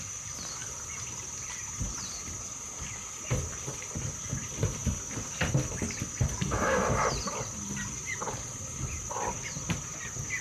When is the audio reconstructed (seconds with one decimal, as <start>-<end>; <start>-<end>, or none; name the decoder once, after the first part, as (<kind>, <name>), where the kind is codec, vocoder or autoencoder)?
none